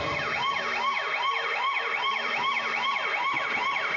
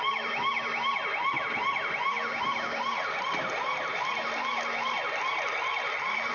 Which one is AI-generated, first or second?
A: first